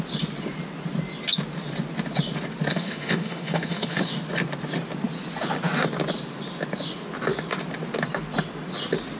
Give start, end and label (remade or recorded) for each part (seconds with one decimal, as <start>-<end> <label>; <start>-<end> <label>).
0.0-2.7 recorded; 2.7-4.1 remade; 4.1-9.2 recorded